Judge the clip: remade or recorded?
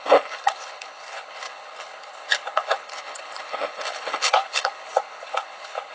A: remade